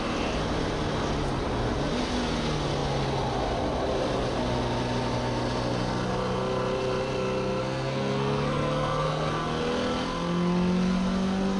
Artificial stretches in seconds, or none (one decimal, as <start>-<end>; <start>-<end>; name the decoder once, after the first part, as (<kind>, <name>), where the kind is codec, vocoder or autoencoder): 7.6-9.3 (codec, SNAC)